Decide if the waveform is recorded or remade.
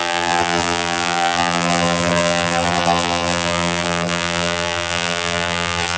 remade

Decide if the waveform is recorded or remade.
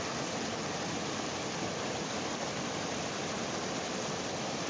recorded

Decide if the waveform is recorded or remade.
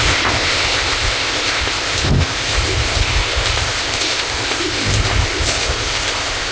remade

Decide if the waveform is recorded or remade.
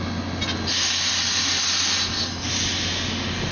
recorded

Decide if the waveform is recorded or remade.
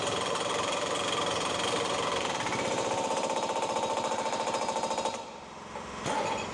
remade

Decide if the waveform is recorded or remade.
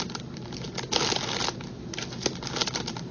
recorded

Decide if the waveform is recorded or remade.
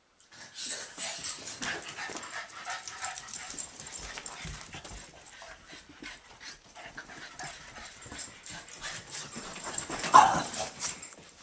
remade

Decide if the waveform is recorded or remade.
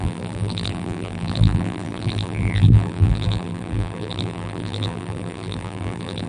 remade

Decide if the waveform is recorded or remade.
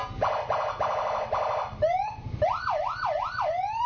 recorded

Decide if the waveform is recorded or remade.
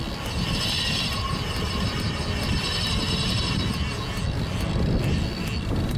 recorded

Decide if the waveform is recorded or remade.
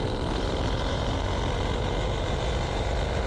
remade